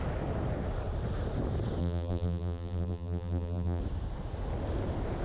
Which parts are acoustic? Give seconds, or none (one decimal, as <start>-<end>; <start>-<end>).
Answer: 0.0-1.8; 3.8-5.2